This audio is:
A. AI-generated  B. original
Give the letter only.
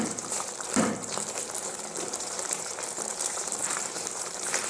A